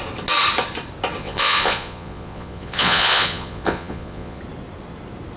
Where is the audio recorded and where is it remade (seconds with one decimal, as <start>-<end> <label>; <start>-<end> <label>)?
0.0-1.2 recorded; 1.2-4.4 remade; 4.4-5.4 recorded